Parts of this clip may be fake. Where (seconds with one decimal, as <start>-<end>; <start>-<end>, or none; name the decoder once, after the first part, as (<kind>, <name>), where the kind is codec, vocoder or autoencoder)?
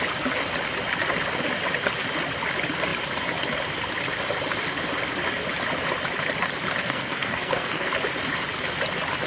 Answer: 6.8-7.9 (codec, SNAC)